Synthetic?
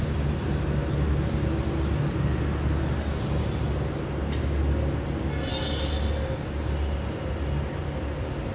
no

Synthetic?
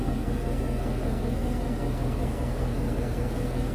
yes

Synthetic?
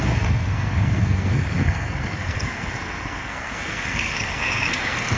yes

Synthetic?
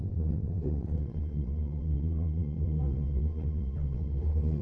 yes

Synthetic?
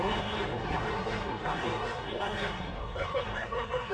yes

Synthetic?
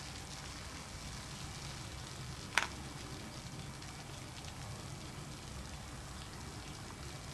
no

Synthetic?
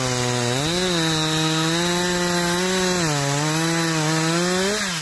no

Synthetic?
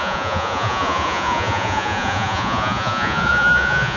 yes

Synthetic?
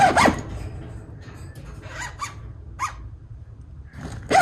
no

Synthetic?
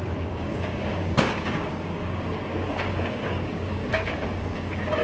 yes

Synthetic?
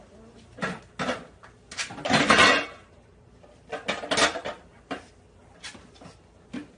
no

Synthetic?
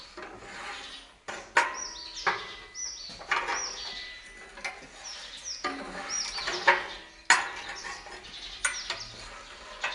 no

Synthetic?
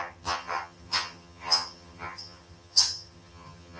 yes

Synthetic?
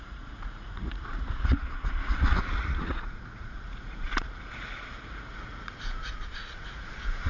yes